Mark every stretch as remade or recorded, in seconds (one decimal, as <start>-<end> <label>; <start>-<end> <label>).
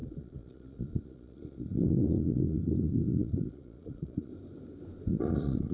0.0-4.3 remade; 4.3-5.1 recorded; 5.1-5.7 remade